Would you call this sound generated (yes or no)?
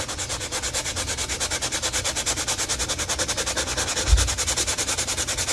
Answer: no